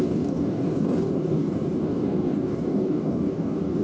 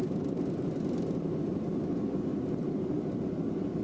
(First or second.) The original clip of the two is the second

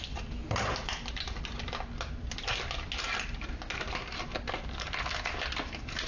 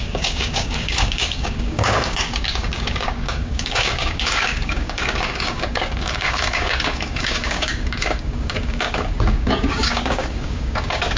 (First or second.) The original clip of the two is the first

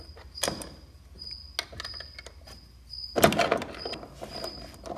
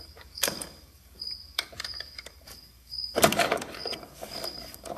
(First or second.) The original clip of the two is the first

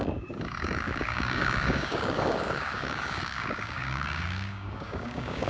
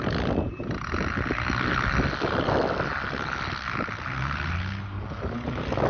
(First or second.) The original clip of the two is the second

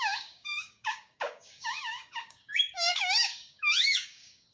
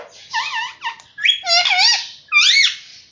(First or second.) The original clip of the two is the second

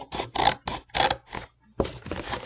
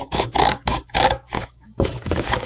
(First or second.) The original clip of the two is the first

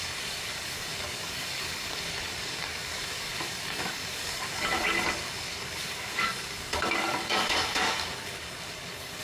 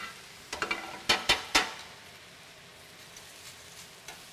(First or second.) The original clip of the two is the second